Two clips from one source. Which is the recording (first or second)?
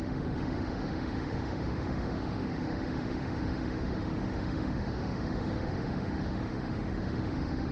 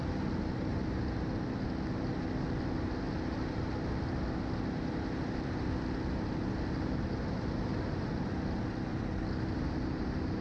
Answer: second